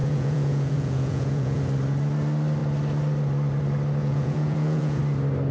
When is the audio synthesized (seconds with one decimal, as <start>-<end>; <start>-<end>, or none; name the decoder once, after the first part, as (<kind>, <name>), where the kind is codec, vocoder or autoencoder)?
0.0-1.6 (vocoder, Vocos); 4.0-5.0